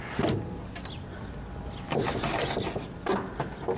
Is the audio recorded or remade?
recorded